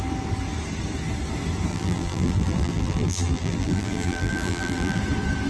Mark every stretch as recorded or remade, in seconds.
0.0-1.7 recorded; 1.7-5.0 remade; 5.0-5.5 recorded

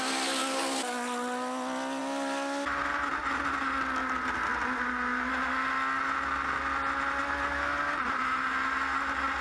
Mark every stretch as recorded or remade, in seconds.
0.0-9.4 recorded